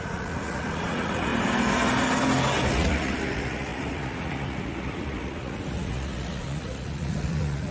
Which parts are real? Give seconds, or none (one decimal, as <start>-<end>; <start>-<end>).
1.3-2.7

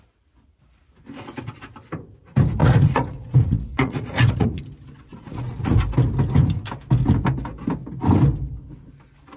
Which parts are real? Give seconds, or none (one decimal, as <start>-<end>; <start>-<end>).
0.0-2.6; 4.6-5.1; 5.8-9.4